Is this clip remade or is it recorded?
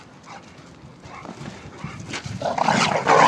recorded